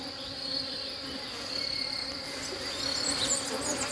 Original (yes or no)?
yes